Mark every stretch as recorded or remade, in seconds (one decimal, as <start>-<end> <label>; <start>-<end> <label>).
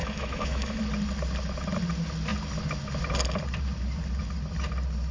0.0-0.8 remade; 0.8-5.1 recorded